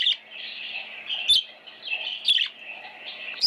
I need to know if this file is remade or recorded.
recorded